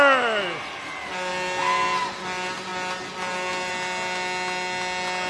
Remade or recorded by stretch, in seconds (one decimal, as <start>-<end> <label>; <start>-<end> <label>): 0.0-5.3 recorded